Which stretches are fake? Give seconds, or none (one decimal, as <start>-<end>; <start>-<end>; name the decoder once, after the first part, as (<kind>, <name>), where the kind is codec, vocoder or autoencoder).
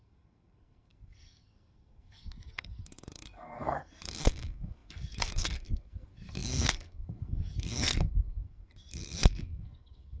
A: 0.0-10.2 (codec, SNAC)